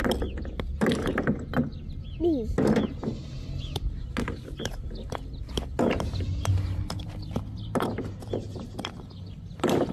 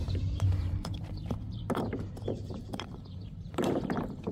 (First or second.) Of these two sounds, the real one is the first